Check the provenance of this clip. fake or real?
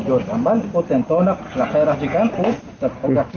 real